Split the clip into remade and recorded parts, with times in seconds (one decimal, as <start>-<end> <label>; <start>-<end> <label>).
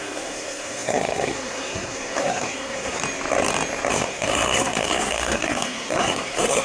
0.0-3.0 remade; 3.0-3.9 recorded; 3.9-6.6 remade